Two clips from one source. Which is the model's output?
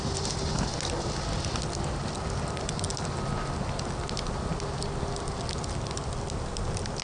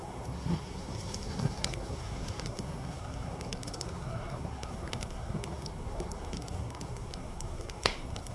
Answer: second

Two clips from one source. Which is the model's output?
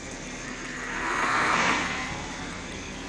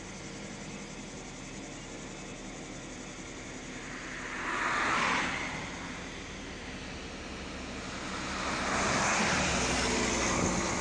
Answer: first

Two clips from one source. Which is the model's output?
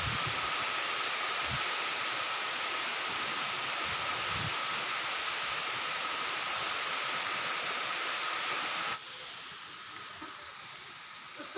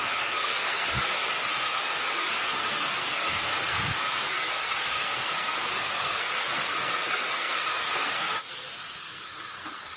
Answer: second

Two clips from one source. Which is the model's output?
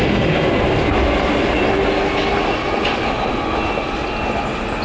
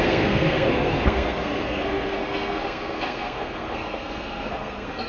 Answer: second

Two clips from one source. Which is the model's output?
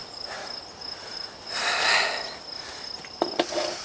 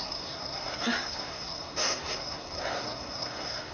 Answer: second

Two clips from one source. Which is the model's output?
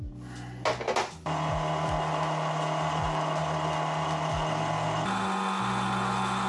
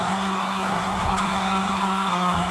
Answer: second